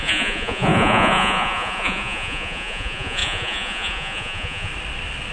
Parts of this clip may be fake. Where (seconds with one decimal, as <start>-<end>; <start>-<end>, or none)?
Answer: 0.0-4.7